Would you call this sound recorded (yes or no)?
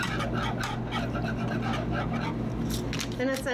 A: yes